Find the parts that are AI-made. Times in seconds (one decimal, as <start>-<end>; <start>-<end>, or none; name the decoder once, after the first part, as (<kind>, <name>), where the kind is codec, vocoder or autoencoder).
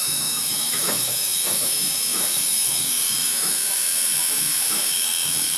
0.0-5.6 (autoencoder, DAC-VAE)